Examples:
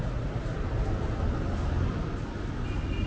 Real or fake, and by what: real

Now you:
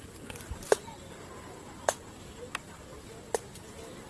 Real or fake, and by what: real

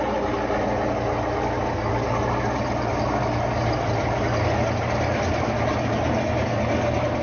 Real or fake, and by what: real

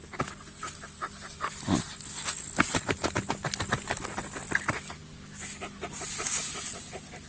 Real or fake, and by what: real